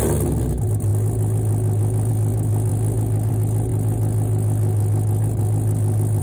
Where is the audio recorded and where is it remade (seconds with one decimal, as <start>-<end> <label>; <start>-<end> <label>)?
0.0-6.2 recorded